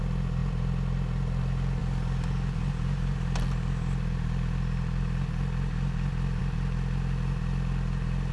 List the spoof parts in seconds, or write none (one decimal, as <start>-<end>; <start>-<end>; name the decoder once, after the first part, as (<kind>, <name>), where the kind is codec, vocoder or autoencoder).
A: 0.4-1.4 (vocoder, BigVGAN v2)